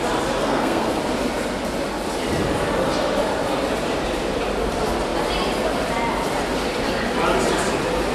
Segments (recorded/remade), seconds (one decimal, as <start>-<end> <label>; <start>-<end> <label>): 0.0-0.4 recorded; 0.4-1.0 remade; 1.0-8.1 recorded